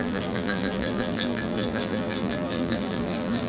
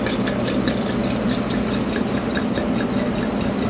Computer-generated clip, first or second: first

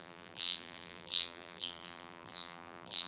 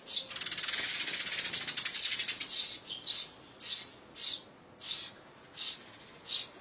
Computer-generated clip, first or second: first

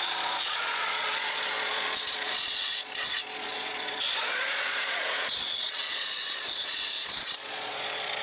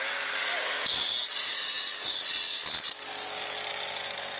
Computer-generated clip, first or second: first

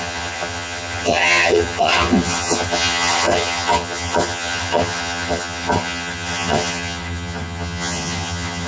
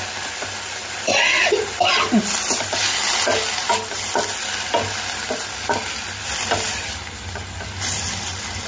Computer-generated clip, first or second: first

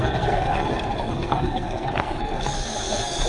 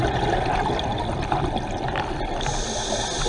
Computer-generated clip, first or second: first